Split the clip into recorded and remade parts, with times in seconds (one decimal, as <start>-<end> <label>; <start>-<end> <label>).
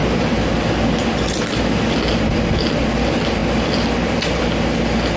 0.0-0.6 remade; 0.6-5.2 recorded